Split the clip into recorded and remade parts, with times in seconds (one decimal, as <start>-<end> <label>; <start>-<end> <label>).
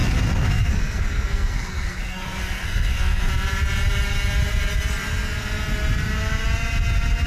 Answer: 0.0-3.3 remade; 3.3-7.3 recorded